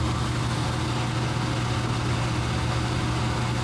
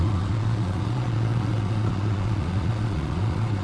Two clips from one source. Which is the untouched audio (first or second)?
first